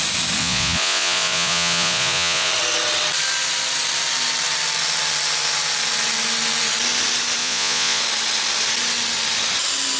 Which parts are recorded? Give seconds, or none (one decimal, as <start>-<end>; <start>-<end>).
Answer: 0.0-0.4; 2.5-7.4; 8.0-10.0